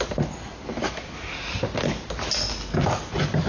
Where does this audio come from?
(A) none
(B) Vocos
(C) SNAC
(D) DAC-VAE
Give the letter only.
A